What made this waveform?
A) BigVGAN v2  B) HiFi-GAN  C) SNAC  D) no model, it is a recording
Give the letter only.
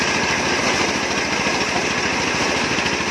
D